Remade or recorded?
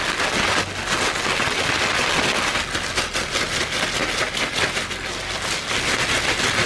recorded